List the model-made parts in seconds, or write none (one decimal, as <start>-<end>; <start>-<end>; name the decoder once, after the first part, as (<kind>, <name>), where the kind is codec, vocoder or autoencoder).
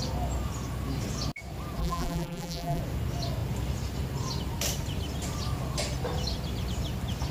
1.8-2.8 (vocoder, BigVGAN v2)